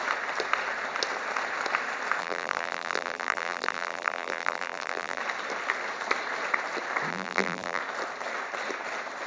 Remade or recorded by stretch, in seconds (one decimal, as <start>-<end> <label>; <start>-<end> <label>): 0.0-2.2 recorded; 2.2-5.2 remade; 5.2-7.1 recorded; 7.1-7.8 remade; 7.8-9.3 recorded